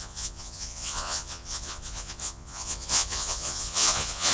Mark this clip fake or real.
fake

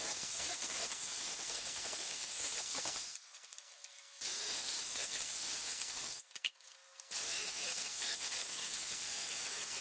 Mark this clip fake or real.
fake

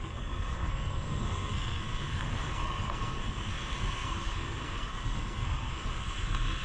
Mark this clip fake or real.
fake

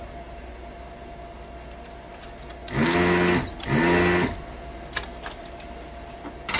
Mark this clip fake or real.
real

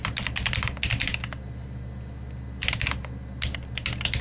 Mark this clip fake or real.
real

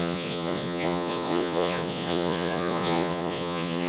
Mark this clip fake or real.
fake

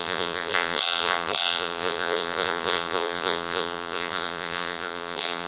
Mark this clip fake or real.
fake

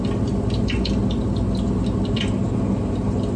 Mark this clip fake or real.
real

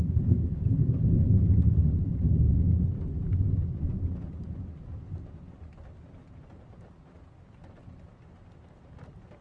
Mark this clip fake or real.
real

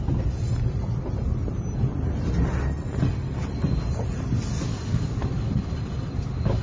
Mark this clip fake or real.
real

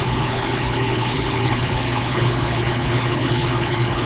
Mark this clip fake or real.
fake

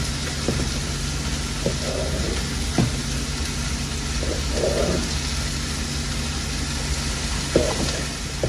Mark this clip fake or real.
real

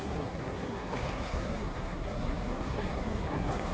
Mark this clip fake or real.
fake